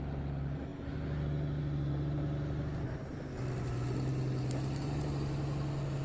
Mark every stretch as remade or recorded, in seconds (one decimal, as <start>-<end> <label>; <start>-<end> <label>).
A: 0.0-6.0 recorded